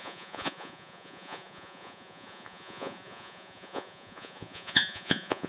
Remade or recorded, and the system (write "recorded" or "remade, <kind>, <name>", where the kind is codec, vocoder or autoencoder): remade, vocoder, Vocos